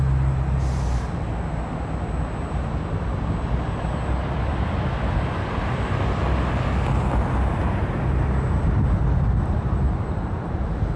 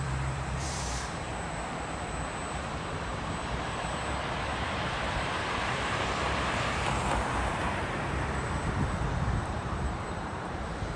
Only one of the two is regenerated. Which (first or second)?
second